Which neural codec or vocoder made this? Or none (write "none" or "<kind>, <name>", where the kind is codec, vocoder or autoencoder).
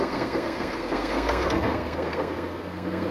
codec, SNAC